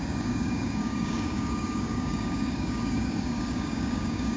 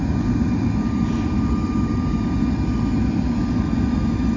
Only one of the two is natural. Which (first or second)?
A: second